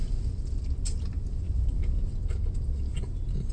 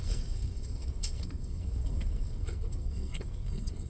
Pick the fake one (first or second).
second